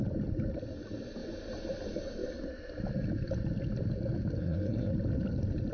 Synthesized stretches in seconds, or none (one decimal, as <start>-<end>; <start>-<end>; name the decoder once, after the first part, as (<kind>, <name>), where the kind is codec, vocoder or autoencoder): 4.4-4.9 (codec, SNAC)

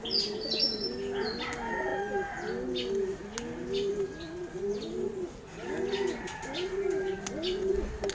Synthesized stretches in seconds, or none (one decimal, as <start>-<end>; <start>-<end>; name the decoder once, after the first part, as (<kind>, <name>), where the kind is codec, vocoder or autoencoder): none

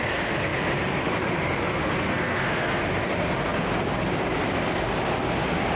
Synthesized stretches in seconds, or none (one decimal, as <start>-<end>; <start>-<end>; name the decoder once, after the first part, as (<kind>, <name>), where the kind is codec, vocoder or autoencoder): 2.1-2.8 (codec, SNAC)